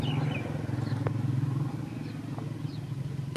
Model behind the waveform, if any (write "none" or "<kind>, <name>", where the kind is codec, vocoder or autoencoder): none